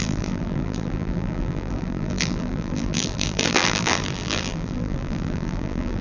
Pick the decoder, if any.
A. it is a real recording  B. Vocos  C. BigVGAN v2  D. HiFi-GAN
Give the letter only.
C